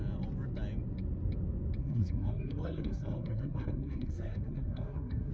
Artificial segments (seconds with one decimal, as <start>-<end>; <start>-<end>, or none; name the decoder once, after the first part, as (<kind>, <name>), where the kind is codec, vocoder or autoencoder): 1.8-5.3 (codec, SNAC)